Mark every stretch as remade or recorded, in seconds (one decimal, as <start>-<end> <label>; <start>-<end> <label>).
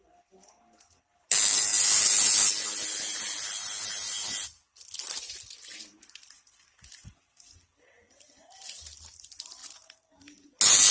0.0-10.9 recorded